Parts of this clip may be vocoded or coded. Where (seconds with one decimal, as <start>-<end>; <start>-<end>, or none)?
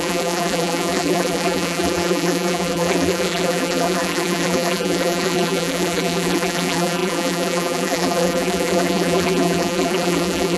0.0-10.6